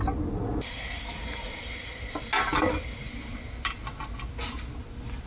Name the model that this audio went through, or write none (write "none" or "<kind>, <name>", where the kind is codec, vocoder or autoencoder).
none